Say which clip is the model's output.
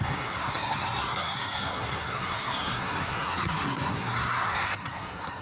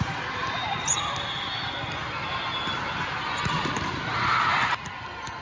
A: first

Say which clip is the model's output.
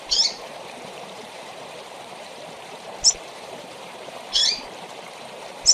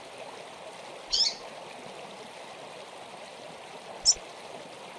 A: first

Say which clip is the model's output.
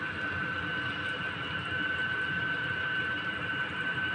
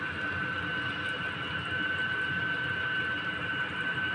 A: first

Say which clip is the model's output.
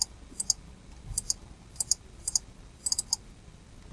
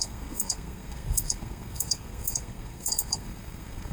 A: second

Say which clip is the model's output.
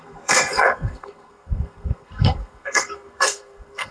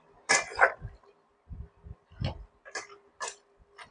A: first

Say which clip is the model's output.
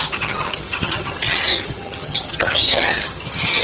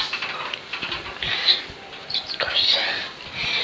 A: first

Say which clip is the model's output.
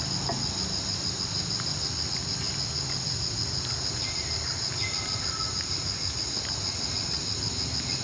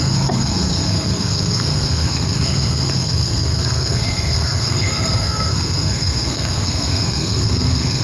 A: second